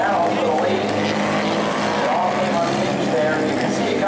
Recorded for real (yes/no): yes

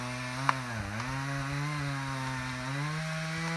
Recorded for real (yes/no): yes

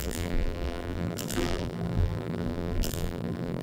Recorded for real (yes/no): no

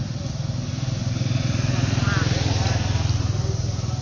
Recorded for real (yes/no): yes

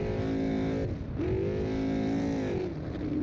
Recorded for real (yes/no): yes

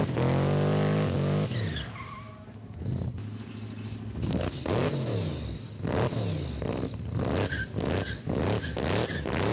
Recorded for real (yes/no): yes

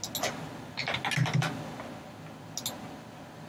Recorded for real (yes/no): yes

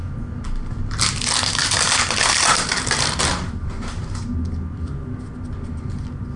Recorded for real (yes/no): yes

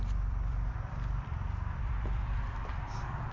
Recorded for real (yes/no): no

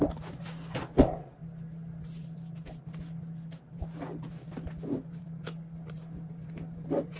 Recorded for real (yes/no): yes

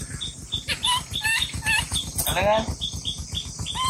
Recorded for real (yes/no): yes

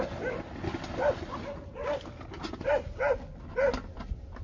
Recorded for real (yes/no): yes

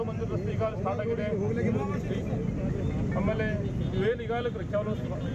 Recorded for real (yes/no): yes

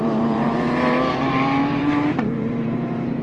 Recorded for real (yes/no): no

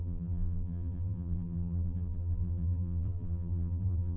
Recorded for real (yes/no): no